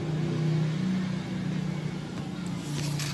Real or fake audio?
real